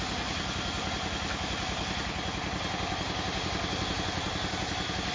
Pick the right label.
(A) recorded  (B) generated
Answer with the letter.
A